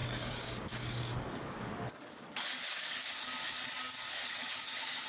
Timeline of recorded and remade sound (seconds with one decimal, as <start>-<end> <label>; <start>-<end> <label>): 0.0-3.1 remade; 3.1-4.4 recorded; 4.4-5.1 remade